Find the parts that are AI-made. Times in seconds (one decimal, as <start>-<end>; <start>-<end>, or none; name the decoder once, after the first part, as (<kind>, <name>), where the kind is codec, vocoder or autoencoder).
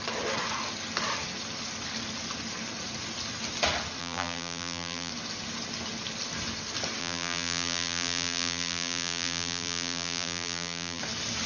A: 4.0-5.1 (vocoder, BigVGAN v2); 7.0-11.0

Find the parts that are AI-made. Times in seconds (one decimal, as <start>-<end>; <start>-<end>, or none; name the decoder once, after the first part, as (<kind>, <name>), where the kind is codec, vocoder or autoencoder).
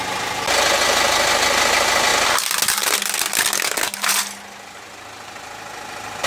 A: none